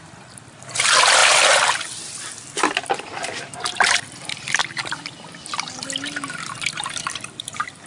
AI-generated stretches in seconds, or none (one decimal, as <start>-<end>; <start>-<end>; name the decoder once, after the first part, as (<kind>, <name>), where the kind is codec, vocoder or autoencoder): 0.0-7.9 (vocoder, BigVGAN v2)